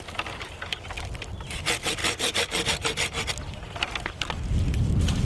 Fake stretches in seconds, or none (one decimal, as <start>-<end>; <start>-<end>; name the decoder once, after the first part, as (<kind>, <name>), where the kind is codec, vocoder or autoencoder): none